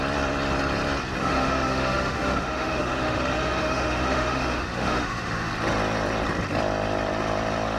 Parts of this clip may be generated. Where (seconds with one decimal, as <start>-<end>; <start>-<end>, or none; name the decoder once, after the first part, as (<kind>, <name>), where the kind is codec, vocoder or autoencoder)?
1.2-5.5 (autoencoder, DAC-VAE)

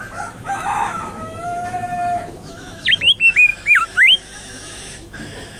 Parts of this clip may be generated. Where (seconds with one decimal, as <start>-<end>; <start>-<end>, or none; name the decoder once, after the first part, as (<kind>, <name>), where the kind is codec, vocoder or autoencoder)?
0.0-5.6 (autoencoder, DAC-VAE)

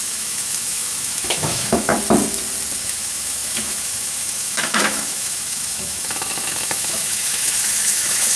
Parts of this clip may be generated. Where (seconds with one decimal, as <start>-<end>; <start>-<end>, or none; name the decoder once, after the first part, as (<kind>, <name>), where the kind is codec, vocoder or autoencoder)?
0.0-1.9 (autoencoder, DAC-VAE); 2.8-8.4

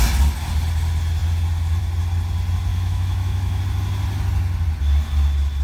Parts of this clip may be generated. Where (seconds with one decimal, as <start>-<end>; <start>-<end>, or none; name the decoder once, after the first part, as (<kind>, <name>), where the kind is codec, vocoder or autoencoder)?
2.7-3.6 (autoencoder, DAC-VAE)

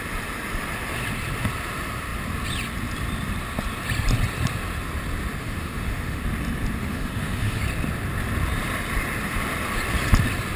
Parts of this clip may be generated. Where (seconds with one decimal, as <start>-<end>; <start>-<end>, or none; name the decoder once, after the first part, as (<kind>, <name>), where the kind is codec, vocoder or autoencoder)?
5.4-6.2 (autoencoder, DAC-VAE); 6.8-7.6

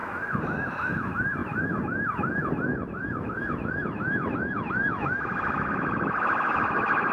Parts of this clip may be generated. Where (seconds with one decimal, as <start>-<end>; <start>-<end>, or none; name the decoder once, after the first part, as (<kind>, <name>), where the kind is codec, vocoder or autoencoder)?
0.0-7.1 (autoencoder, DAC-VAE)

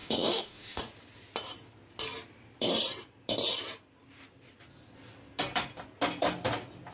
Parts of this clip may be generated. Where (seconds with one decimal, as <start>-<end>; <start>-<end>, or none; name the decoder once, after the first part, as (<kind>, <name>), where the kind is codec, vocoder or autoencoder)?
0.0-0.8 (autoencoder, DAC-VAE)

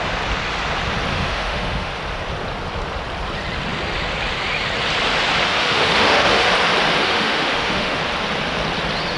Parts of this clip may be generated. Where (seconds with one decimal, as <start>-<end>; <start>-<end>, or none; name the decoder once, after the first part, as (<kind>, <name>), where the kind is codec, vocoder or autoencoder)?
1.1-1.9 (autoencoder, DAC-VAE); 5.5-6.5; 7.0-8.0